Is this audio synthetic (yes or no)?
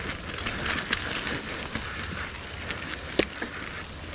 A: no